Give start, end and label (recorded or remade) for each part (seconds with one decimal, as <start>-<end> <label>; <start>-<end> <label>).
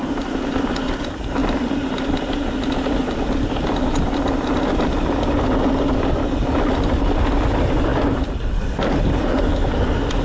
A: 0.0-10.2 recorded